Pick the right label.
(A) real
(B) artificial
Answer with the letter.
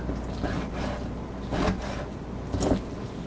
A